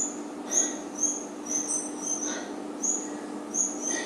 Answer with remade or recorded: recorded